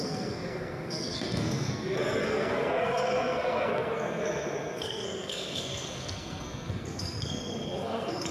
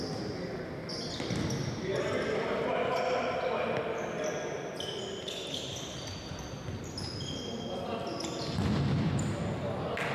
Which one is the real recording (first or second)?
second